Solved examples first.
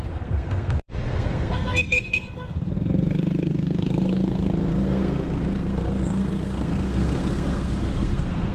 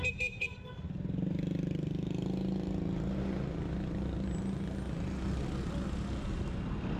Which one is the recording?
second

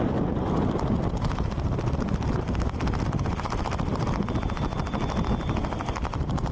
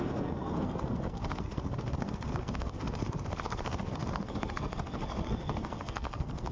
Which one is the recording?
first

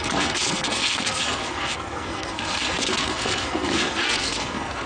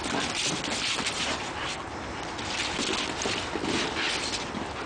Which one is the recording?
second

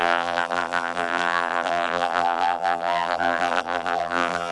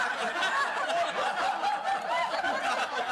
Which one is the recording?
second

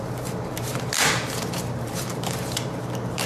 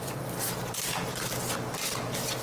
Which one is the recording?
second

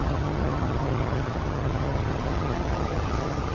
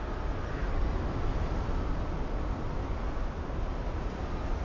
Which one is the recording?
second